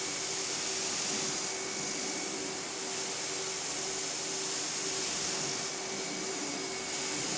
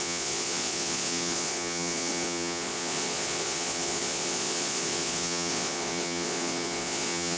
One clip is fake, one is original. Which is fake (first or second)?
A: second